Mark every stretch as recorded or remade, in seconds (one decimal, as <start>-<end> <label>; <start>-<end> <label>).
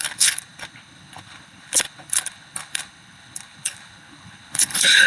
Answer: 0.0-5.1 remade